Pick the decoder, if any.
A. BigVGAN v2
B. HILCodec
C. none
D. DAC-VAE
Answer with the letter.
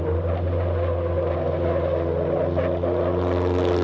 C